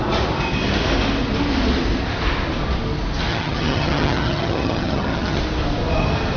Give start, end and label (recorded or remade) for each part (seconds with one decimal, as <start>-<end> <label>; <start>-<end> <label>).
0.0-3.3 recorded; 3.3-5.4 remade; 5.4-6.4 recorded